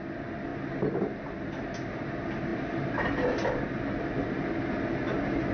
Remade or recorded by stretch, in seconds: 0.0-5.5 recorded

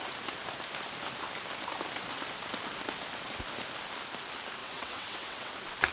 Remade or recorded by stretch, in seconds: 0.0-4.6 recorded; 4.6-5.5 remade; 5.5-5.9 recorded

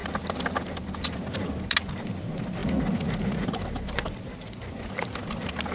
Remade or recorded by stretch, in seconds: 0.0-5.7 recorded